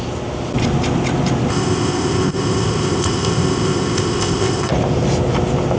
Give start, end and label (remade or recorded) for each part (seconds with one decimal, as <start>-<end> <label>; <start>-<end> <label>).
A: 0.0-1.5 recorded; 1.5-4.7 remade; 4.7-5.8 recorded